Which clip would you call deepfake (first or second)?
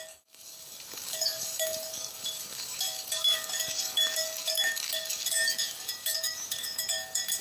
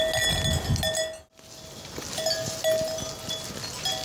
first